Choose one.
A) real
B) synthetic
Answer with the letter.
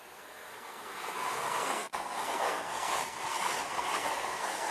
B